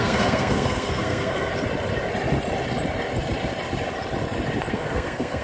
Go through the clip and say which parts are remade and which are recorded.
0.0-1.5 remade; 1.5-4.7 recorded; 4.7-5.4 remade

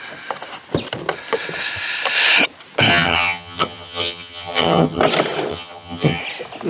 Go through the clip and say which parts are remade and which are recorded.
0.0-2.9 recorded; 2.9-5.0 remade; 5.0-5.5 recorded; 5.5-6.2 remade; 6.2-6.7 recorded

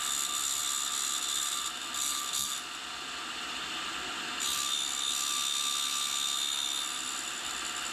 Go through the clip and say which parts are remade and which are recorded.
0.0-7.9 recorded